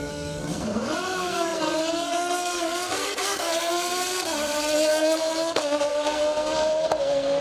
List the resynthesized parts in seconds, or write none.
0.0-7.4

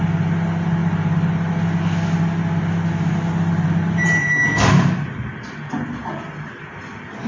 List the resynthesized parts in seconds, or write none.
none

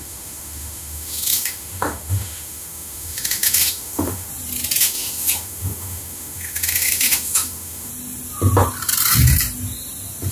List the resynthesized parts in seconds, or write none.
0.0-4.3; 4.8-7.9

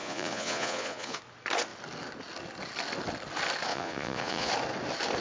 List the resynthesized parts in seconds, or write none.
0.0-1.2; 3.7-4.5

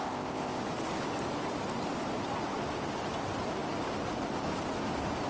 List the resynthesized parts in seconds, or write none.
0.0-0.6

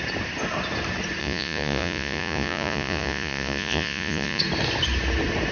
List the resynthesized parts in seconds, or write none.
1.2-4.4